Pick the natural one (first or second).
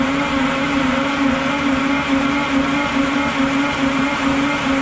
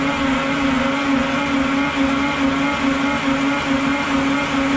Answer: second